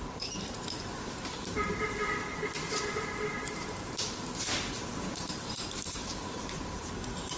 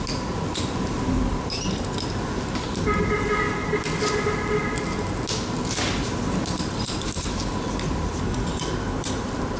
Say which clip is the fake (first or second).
first